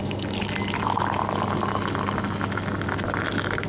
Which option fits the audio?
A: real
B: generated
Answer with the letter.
A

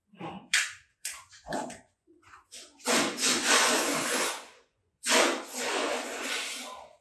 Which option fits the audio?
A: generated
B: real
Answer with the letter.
A